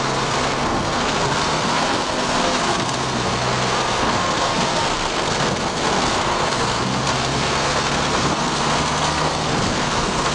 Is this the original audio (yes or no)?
no